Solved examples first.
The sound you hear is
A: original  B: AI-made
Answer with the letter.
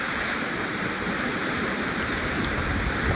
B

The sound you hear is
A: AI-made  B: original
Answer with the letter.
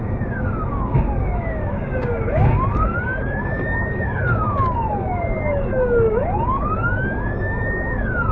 A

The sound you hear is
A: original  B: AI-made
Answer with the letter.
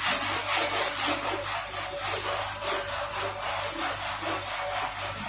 A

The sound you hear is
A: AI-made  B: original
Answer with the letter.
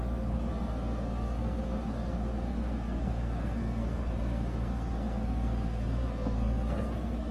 A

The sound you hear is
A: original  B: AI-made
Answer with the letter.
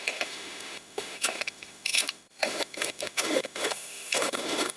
B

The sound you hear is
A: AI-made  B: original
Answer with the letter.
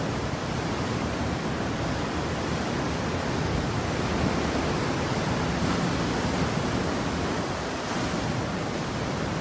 B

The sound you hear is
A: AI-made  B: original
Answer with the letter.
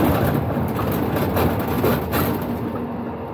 B